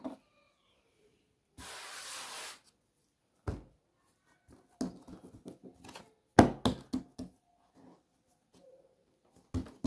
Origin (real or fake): real